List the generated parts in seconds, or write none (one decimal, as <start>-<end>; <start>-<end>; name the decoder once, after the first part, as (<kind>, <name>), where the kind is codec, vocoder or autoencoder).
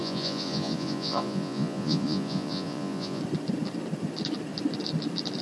0.0-3.2 (vocoder, Vocos)